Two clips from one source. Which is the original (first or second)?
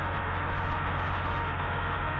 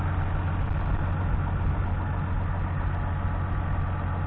second